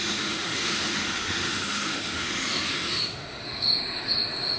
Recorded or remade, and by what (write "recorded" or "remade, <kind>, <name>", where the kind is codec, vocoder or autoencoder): remade, autoencoder, DAC-VAE